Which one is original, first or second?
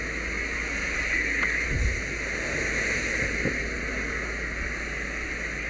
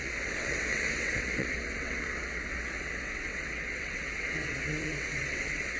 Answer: first